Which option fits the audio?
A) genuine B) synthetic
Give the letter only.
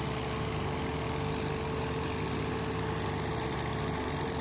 A